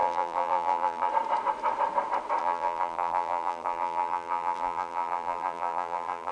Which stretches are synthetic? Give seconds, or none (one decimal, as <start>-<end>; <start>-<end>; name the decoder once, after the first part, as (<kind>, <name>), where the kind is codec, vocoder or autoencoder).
0.0-1.1 (vocoder, BigVGAN v2); 2.4-6.3